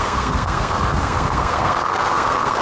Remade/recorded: remade